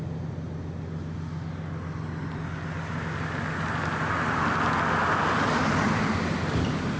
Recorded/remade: recorded